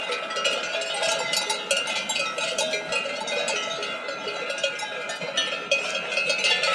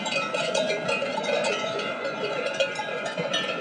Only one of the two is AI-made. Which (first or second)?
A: second